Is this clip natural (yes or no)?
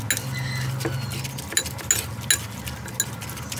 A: yes